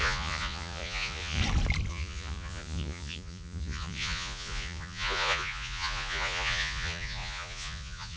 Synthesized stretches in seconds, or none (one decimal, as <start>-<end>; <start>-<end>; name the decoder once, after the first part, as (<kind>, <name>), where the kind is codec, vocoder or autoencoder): 0.0-1.4 (vocoder, Vocos); 1.9-8.2